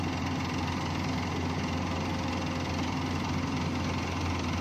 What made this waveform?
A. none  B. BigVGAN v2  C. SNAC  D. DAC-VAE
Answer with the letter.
B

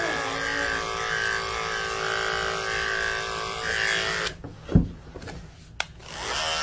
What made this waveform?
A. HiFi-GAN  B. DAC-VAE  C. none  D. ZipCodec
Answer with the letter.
C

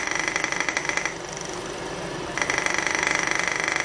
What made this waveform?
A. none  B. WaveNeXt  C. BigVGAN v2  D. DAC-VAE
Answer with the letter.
A